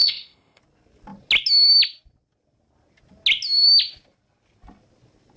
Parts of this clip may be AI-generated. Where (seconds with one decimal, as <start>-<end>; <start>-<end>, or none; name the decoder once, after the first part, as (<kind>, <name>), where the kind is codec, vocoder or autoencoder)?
0.0-0.6 (codec, ZipCodec)